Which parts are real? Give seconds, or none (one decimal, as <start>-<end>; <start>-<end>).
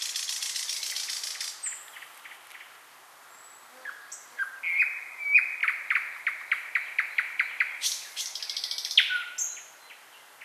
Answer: 0.0-10.4